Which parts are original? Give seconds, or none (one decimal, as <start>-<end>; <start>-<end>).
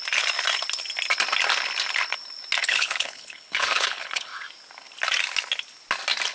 0.0-2.6; 4.3-6.3